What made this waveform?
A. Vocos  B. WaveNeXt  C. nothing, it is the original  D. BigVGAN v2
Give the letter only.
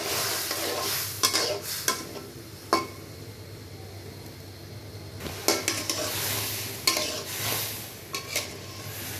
C